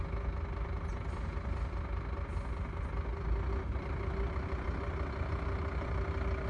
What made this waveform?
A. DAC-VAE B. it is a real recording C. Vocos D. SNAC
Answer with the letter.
B